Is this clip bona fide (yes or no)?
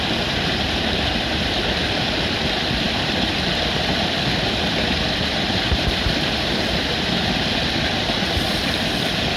no